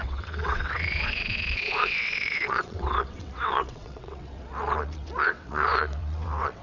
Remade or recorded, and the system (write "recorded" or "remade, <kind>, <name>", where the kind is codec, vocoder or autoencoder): remade, vocoder, WaveNeXt